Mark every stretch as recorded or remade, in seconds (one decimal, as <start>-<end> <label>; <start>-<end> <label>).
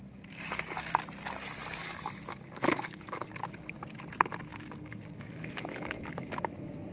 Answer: 0.0-1.8 recorded; 1.8-3.5 remade; 3.5-4.5 recorded; 4.5-6.3 remade; 6.3-6.9 recorded